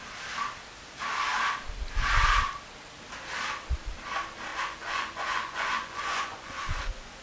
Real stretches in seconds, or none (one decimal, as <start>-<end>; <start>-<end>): 0.0-4.5